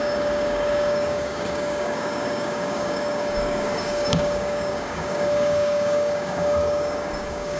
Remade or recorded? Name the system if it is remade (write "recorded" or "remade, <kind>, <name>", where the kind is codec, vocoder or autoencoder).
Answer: remade, codec, DAC